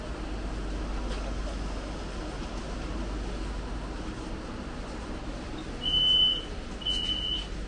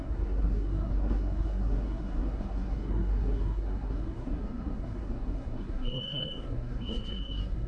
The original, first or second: first